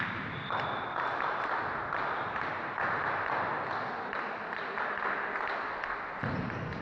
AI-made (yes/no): no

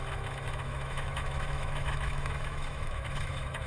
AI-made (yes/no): yes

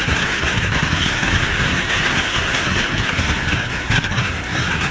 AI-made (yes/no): yes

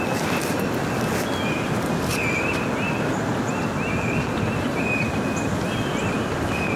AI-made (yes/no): no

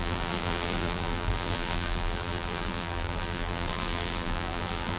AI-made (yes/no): yes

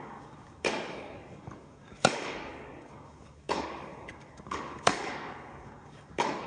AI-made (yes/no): yes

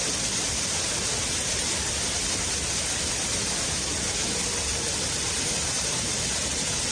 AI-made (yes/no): no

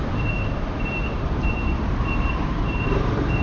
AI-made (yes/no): yes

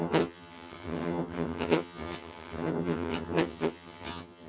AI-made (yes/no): yes